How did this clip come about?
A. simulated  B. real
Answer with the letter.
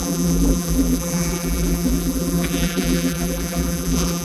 A